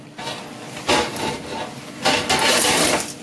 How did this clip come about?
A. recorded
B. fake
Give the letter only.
A